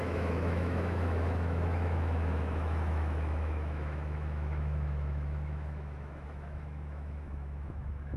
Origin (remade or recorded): remade